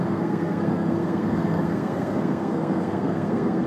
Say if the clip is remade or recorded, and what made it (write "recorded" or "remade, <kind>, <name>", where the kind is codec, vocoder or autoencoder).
remade, codec, SNAC